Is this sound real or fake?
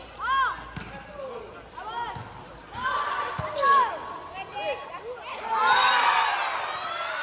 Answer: real